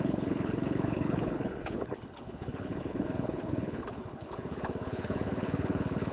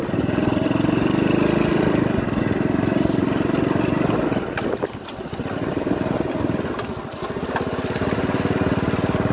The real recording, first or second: second